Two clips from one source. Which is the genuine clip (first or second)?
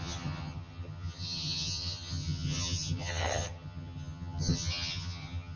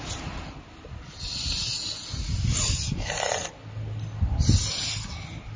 second